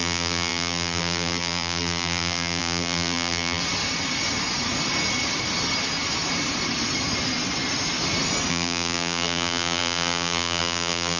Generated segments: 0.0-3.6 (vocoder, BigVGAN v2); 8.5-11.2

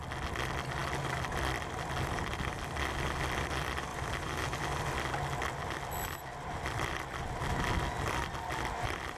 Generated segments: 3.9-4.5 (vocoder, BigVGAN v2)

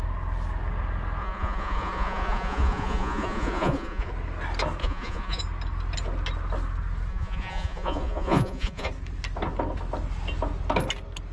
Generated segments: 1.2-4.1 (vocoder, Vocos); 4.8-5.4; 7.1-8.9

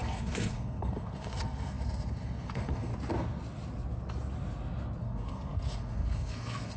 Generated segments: 0.0-2.9 (codec, SNAC); 5.0-6.8

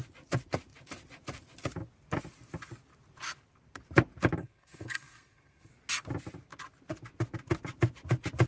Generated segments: 4.4-5.7 (codec, SNAC)